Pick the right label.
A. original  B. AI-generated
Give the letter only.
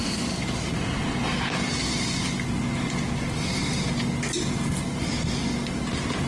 A